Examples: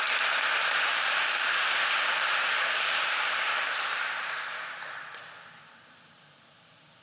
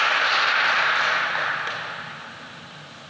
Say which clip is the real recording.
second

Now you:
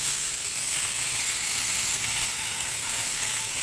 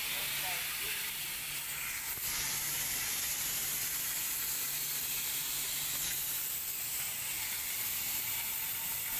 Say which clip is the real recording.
second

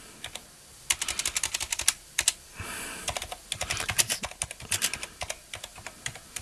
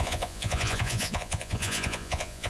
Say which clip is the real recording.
first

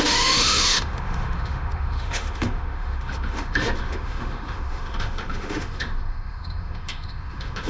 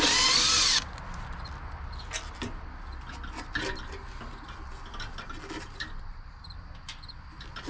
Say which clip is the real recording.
second